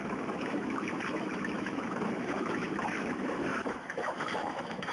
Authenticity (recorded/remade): remade